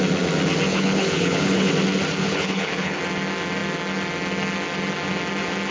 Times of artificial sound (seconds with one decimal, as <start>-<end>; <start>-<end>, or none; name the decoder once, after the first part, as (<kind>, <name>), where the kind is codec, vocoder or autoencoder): 0.7-1.7 (codec, HILCodec); 2.2-3.0